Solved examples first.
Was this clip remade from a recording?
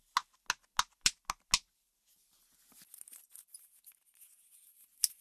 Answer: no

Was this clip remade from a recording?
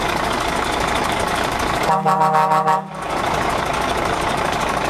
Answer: yes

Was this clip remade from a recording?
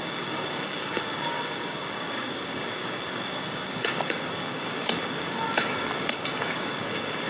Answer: yes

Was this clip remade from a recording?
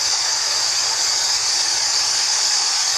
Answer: yes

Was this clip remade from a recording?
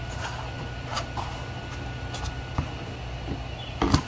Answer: no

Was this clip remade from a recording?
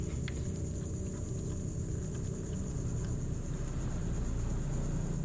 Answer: no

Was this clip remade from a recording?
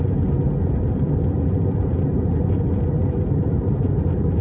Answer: no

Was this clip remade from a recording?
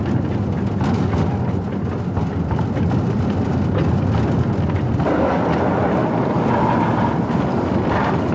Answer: no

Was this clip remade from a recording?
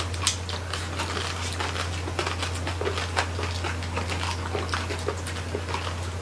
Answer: no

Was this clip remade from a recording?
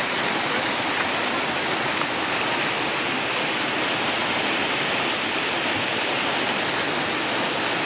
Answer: no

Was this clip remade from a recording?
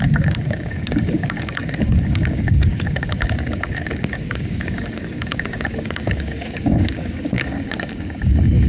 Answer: yes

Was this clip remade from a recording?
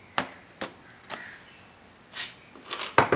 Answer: no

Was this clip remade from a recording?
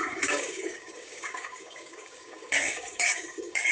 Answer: yes